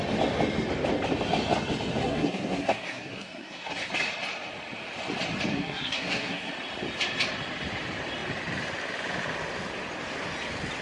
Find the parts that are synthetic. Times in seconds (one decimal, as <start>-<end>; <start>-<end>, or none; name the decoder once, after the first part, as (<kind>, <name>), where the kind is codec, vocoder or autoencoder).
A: 2.0-3.9 (codec, SNAC); 5.5-6.5